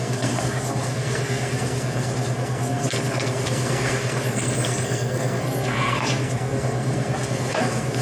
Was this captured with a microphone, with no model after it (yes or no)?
no